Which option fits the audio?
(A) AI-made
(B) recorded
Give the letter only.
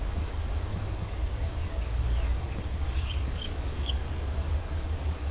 A